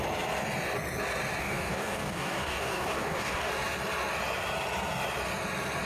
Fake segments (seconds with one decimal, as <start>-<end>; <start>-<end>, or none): 1.4-3.5